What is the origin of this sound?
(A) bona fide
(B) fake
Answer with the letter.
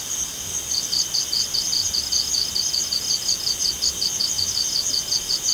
A